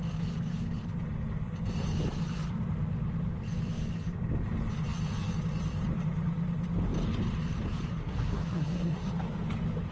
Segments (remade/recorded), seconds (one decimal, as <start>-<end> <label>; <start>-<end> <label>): 0.0-7.9 recorded; 7.9-9.1 remade; 9.1-9.9 recorded